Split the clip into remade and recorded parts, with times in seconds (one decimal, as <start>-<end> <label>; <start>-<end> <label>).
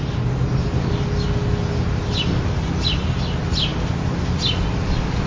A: 0.0-5.3 recorded